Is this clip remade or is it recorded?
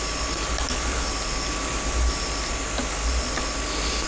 recorded